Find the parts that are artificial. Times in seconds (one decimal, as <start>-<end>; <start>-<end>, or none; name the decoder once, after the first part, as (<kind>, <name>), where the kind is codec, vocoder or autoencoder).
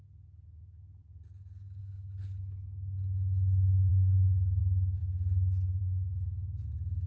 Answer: 1.8-2.4 (codec, HILCodec); 3.9-4.6